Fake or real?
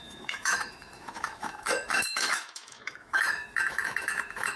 fake